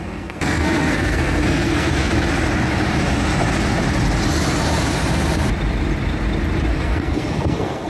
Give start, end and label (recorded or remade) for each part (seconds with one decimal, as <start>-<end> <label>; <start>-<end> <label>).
0.0-2.1 remade; 2.1-6.7 recorded; 6.7-7.9 remade